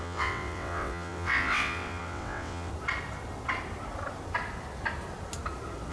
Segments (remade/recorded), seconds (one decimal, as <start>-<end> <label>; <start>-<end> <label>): 0.0-2.7 remade; 2.7-5.9 recorded